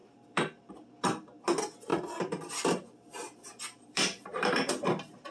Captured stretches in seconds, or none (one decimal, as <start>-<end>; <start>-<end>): 0.7-1.9